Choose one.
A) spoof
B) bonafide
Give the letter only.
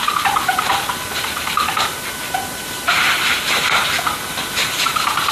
B